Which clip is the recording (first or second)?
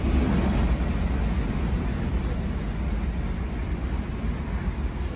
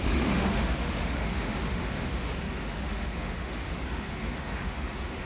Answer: first